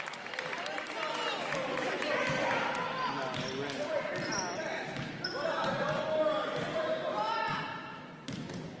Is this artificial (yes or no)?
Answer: no